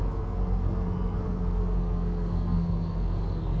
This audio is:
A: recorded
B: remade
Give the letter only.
B